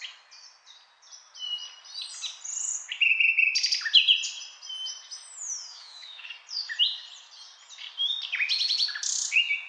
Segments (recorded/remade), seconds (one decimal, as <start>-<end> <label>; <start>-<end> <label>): 0.0-5.7 recorded; 5.7-6.3 remade; 6.3-9.7 recorded